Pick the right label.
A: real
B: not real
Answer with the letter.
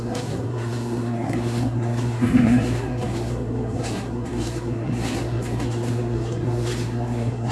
B